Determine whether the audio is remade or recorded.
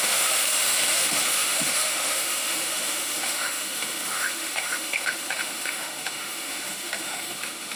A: remade